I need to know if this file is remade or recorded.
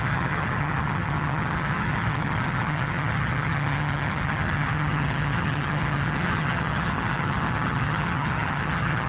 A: remade